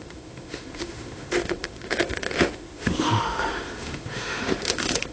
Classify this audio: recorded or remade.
remade